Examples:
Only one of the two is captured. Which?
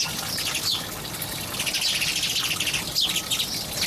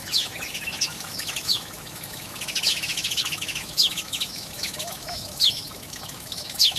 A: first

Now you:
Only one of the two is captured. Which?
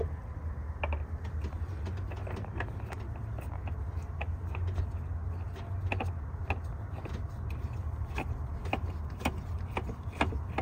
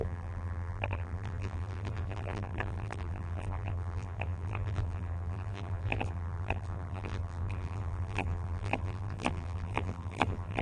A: first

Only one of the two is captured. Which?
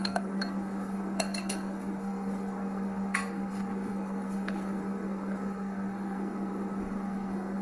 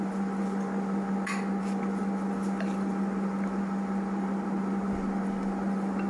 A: second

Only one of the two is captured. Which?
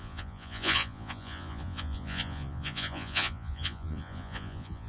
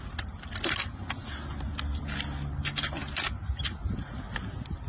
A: second